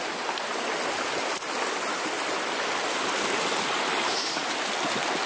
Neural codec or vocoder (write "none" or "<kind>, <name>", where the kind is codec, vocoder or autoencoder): none